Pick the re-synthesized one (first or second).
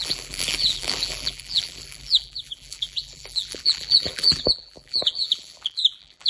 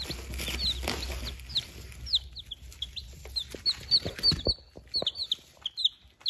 first